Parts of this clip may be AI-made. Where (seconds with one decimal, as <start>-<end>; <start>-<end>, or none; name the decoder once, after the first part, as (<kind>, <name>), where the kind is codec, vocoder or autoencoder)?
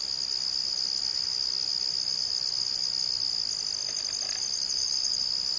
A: none